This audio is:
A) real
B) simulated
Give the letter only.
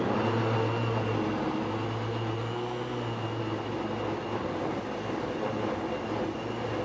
A